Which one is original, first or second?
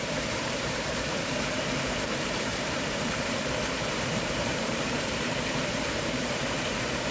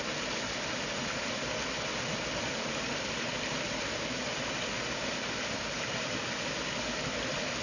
second